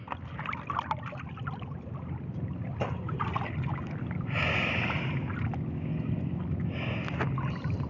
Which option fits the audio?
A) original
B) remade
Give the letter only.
A